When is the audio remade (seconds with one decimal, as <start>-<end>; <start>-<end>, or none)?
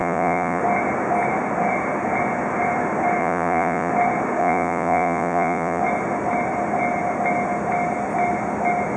0.0-0.6; 3.2-3.9; 4.4-5.8